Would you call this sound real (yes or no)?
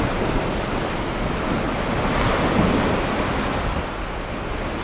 yes